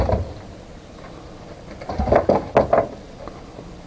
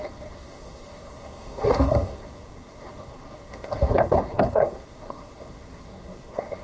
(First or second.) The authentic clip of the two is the first